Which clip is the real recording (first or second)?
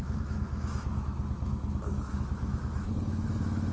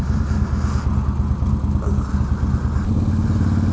second